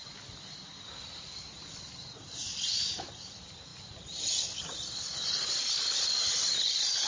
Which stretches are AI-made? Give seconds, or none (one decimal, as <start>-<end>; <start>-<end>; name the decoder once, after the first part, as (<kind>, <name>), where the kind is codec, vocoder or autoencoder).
none